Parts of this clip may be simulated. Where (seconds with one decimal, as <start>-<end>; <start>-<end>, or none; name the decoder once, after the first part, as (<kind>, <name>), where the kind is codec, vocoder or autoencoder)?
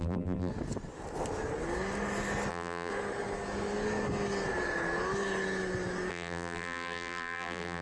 0.0-0.5 (vocoder, BigVGAN v2); 2.5-2.9; 6.1-7.8